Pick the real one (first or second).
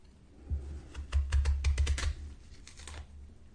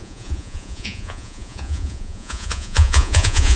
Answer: first